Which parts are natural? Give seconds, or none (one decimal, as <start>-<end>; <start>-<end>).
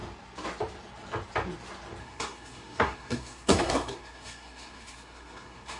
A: 0.0-2.0